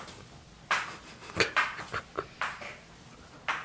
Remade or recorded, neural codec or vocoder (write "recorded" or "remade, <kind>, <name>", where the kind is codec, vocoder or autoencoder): recorded